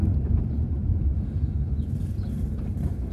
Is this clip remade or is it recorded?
remade